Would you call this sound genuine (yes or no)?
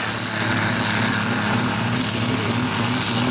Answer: yes